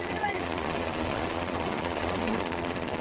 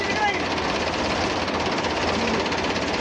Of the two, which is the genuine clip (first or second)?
second